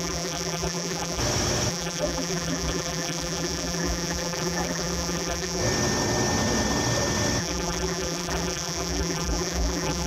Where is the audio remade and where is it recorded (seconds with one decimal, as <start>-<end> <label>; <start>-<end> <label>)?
0.0-1.2 remade; 1.2-1.7 recorded; 1.7-5.6 remade; 5.6-7.4 recorded; 7.4-10.1 remade